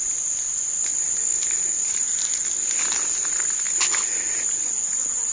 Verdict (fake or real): real